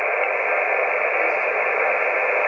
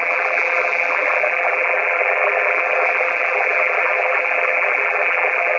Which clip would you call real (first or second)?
first